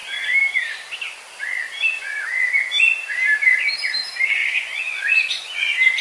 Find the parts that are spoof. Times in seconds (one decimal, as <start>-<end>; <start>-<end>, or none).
4.4-5.6